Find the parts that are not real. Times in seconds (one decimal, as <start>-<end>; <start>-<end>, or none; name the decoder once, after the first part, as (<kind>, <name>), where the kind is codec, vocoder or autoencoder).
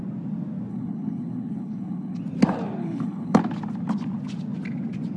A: 0.7-2.2 (codec, HILCodec); 2.8-3.4